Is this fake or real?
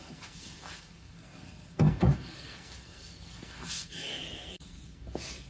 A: fake